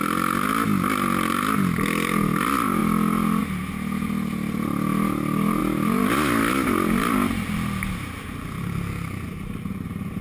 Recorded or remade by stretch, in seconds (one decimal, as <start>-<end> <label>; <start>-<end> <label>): 0.0-10.2 recorded